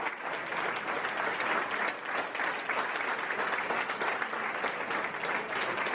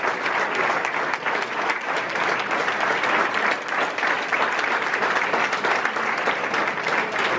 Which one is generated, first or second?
second